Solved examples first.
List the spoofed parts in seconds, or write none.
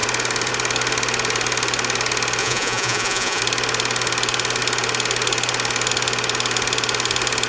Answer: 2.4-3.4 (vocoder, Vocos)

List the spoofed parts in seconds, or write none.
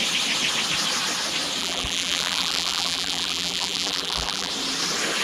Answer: 1.6-4.5 (vocoder, BigVGAN v2)